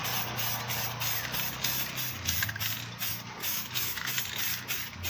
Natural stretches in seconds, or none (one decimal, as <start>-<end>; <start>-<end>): 0.0-3.4; 4.1-5.1